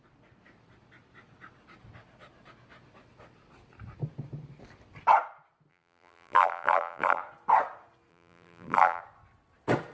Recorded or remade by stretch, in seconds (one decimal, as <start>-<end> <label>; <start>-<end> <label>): 0.0-5.7 recorded; 5.7-7.2 remade; 7.2-8.1 recorded; 8.1-9.0 remade; 9.0-9.9 recorded